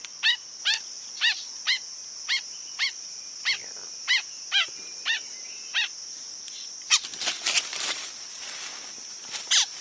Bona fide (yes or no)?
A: yes